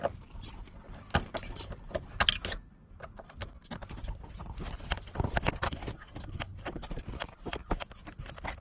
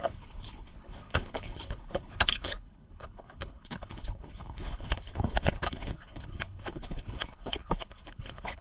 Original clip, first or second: first